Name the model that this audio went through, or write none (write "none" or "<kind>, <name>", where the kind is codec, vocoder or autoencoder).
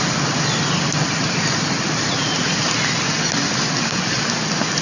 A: none